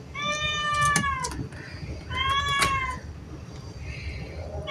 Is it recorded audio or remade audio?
recorded